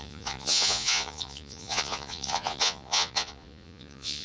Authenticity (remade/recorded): remade